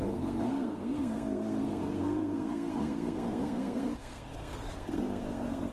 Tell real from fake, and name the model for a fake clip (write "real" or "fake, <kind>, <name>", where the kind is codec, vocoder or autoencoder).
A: fake, codec, SNAC